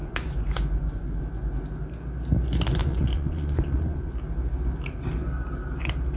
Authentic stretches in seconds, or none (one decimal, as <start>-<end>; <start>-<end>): 1.2-2.8; 4.1-6.2